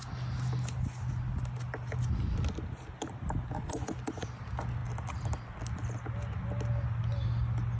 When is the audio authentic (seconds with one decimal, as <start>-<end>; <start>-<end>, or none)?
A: 0.0-7.8